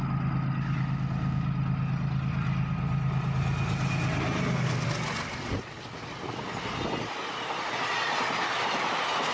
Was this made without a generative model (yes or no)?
yes